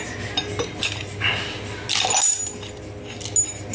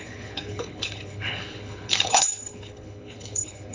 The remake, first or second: second